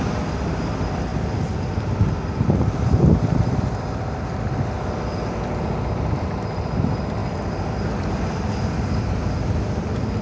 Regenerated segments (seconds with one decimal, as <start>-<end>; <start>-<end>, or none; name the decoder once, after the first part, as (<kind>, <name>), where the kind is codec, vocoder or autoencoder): none